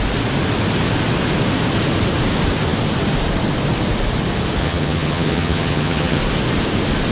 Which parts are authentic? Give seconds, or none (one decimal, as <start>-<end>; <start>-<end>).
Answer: 0.0-4.6; 6.2-7.1